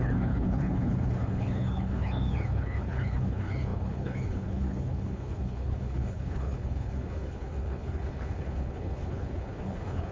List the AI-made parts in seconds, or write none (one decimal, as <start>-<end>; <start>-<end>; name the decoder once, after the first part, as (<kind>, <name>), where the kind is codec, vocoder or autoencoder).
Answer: 0.0-10.1 (codec, HILCodec)